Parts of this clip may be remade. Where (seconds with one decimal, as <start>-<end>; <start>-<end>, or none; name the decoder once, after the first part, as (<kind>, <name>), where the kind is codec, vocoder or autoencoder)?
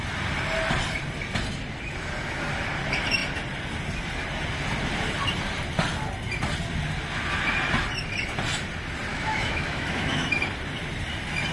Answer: 9.1-10.4 (autoencoder, DAC-VAE)